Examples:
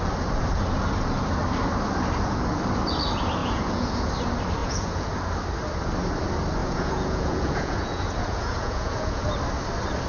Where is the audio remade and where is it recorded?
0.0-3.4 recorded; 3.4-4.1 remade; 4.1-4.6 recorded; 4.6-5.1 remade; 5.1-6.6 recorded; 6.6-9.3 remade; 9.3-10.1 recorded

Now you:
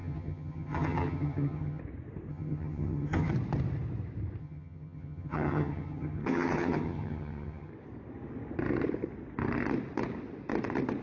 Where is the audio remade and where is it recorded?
0.0-1.8 remade; 1.8-2.3 recorded; 2.3-3.3 remade; 3.3-4.4 recorded; 4.4-7.7 remade; 7.7-11.0 recorded